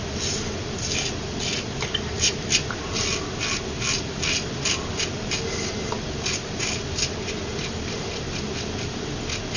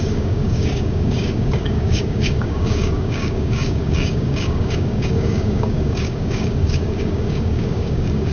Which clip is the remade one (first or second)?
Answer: second